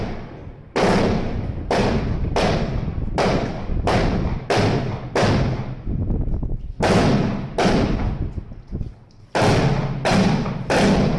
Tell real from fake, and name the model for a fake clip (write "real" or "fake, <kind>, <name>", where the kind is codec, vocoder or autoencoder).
real